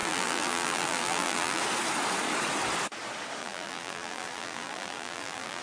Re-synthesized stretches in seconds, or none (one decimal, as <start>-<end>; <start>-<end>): 0.0-1.6; 3.4-5.6